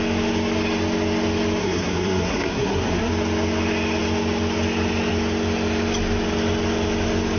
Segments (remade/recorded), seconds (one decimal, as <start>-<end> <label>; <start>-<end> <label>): 0.0-1.6 recorded; 1.6-3.1 remade; 3.1-7.4 recorded